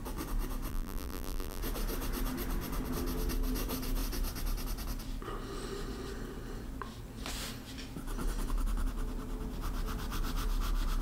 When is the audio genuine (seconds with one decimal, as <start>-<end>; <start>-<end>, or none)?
0.0-0.7; 1.6-11.0